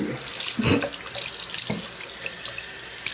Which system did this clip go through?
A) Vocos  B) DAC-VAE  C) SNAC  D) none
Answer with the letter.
D